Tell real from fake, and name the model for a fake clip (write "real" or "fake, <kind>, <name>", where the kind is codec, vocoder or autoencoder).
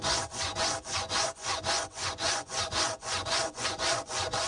fake, vocoder, Vocos